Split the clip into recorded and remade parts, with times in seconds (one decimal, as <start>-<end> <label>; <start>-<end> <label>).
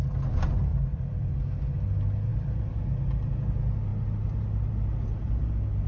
0.0-0.7 recorded; 0.7-1.3 remade; 1.3-2.3 recorded; 2.3-2.8 remade; 2.8-5.9 recorded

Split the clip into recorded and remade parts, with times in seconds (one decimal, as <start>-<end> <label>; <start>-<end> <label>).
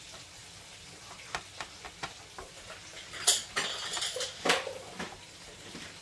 0.0-6.0 recorded